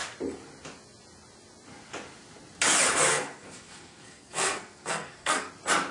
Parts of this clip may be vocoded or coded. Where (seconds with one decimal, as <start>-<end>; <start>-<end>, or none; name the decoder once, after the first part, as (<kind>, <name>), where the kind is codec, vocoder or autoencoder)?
3.1-5.5 (codec, SNAC)